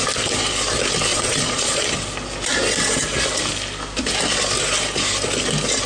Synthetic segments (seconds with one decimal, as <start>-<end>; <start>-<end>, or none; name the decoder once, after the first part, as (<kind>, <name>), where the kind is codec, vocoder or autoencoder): 1.1-1.8 (vocoder, Vocos)